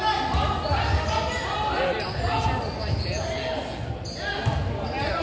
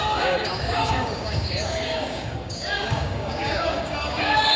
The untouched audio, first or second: first